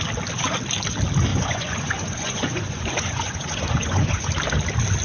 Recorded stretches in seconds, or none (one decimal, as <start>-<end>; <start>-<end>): 0.0-1.3; 4.3-5.0